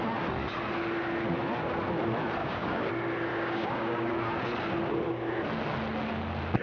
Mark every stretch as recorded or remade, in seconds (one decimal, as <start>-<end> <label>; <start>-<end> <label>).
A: 0.0-2.4 recorded; 2.4-2.9 remade; 2.9-3.3 recorded; 3.3-4.1 remade; 4.1-6.6 recorded